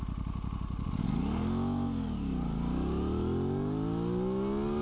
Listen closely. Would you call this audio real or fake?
real